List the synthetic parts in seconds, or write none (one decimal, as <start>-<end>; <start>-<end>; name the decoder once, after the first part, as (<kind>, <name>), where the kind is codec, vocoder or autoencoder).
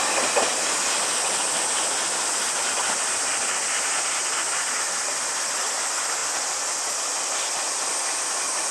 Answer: none